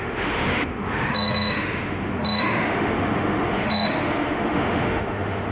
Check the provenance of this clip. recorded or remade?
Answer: remade